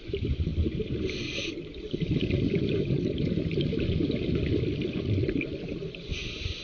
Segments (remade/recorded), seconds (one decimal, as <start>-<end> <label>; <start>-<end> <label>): 0.0-6.6 recorded